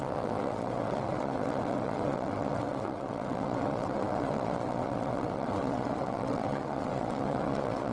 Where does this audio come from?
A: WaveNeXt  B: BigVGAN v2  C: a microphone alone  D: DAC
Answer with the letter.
A